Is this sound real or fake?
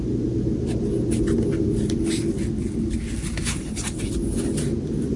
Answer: real